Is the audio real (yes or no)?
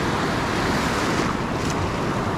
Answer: yes